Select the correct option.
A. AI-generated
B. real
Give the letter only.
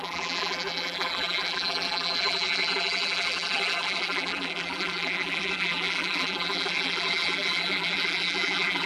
A